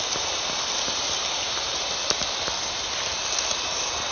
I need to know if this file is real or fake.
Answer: fake